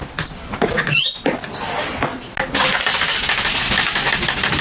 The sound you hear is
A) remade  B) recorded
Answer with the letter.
B